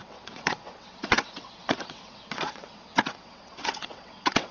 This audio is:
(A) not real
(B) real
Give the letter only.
A